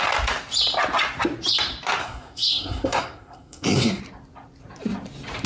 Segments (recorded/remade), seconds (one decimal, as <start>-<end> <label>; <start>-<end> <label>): 0.0-2.0 recorded; 2.0-4.0 remade; 4.0-5.5 recorded